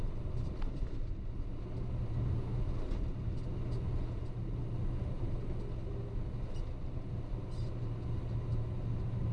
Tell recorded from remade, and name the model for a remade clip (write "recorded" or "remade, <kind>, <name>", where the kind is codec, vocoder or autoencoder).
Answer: recorded